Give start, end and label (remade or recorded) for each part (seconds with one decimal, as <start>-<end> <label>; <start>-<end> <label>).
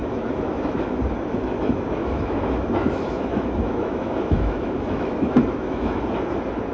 0.0-1.0 remade; 1.0-2.0 recorded; 2.0-6.0 remade; 6.0-6.7 recorded